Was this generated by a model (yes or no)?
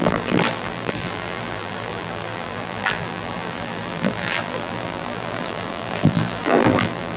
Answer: yes